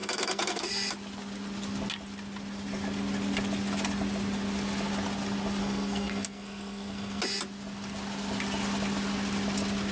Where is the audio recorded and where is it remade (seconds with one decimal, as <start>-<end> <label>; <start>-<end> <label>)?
0.0-0.7 remade; 0.7-5.6 recorded; 5.6-7.2 remade; 7.2-9.9 recorded